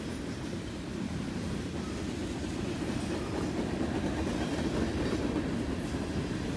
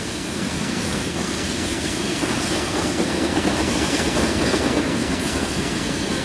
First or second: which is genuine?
first